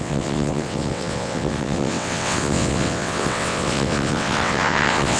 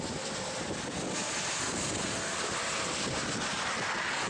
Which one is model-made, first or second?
first